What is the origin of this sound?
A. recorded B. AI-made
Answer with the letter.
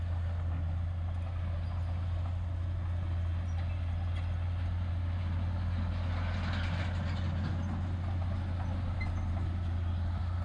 A